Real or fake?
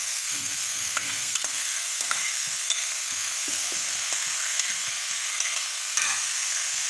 fake